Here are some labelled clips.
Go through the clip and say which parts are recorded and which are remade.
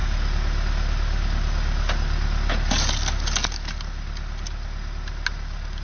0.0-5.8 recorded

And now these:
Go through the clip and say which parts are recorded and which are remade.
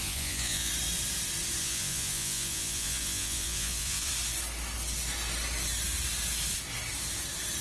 0.0-0.7 remade; 0.7-1.6 recorded; 1.6-4.1 remade; 4.1-7.6 recorded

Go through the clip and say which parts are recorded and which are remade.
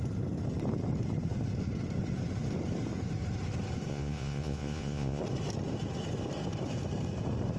0.0-3.9 recorded; 3.9-5.2 remade; 5.2-7.6 recorded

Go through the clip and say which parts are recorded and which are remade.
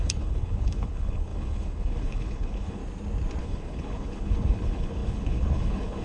0.0-2.8 remade; 2.8-3.4 recorded; 3.4-6.0 remade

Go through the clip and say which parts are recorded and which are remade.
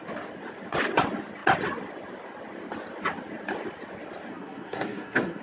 0.0-4.3 recorded; 4.3-5.4 remade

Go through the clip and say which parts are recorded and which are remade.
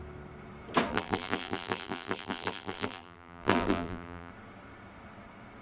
0.0-0.9 recorded; 0.9-4.3 remade; 4.3-5.6 recorded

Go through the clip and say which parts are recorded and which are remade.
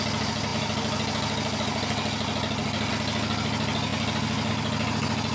0.0-5.3 recorded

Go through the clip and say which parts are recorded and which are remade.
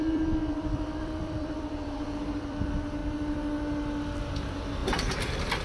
0.0-3.0 remade; 3.0-4.2 recorded; 4.2-5.6 remade